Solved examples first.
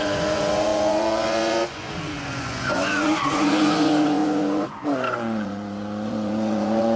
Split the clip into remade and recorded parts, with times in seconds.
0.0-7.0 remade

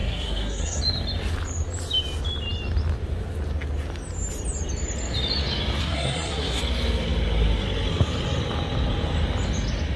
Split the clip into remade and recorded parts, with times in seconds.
0.0-0.8 remade; 0.8-5.8 recorded; 5.8-6.6 remade; 6.6-10.0 recorded

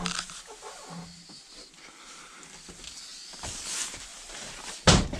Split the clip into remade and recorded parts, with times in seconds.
0.0-3.1 recorded; 3.1-3.6 remade; 3.6-4.1 recorded; 4.1-4.7 remade; 4.7-5.2 recorded

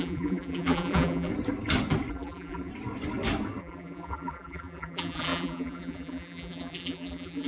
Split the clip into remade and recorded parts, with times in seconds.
0.0-1.3 remade; 1.3-2.1 recorded; 2.1-2.7 remade; 2.7-3.6 recorded; 3.6-7.5 remade

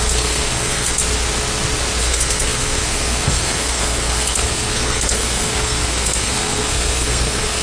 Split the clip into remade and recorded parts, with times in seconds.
0.0-1.0 remade; 1.0-2.0 recorded; 2.0-7.6 remade

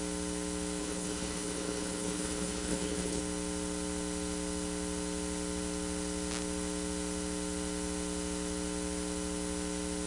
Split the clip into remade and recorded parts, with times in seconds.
0.0-0.8 recorded; 0.8-3.2 remade; 3.2-10.1 recorded

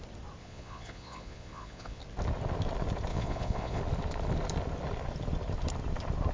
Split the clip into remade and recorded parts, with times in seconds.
0.0-0.4 recorded; 0.4-2.0 remade; 2.0-3.1 recorded; 3.1-3.8 remade; 3.8-6.3 recorded